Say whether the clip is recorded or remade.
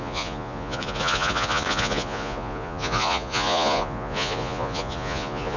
remade